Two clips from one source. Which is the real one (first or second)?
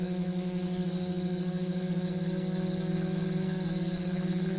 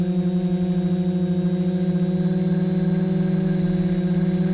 second